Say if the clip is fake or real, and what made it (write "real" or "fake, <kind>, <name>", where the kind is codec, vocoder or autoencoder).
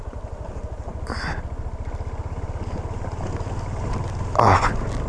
real